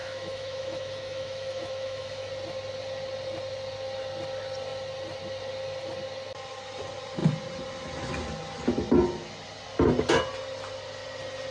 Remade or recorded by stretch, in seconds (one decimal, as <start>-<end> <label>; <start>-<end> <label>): 0.0-2.3 remade; 2.3-11.5 recorded